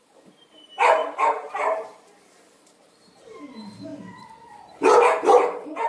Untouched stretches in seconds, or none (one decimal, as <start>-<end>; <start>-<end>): 3.9-4.6